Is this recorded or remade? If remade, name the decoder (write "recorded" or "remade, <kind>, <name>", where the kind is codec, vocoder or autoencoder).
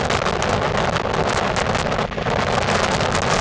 recorded